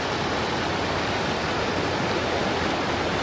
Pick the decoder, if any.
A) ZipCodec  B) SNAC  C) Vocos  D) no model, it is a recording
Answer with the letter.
D